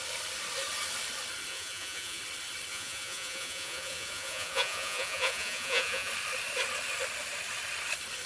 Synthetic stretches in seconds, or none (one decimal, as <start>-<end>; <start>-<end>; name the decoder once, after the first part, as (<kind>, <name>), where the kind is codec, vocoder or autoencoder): 1.5-2.2 (vocoder, Vocos); 2.7-6.1